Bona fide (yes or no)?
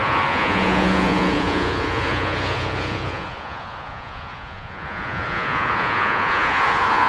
no